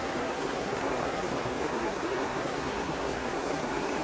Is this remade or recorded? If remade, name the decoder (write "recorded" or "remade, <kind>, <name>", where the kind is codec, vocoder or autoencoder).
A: remade, codec, SNAC